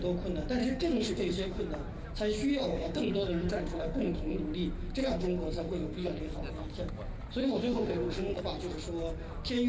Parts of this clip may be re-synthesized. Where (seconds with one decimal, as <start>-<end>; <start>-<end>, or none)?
0.6-1.6; 2.5-4.4; 5.0-6.2; 7.4-8.4